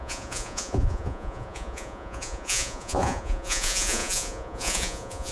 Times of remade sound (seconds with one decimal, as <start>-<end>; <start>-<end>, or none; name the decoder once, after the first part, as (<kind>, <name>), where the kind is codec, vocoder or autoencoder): 0.0-5.3 (vocoder, Vocos)